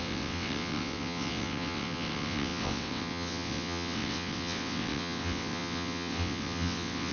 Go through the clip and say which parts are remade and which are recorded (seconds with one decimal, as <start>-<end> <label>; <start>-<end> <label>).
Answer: 0.0-7.1 remade